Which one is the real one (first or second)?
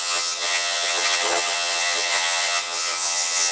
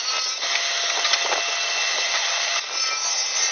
second